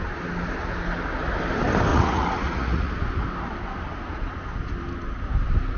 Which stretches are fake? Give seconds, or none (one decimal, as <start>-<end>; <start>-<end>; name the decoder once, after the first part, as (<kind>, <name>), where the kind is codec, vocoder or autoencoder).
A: 1.9-2.9 (vocoder, Vocos)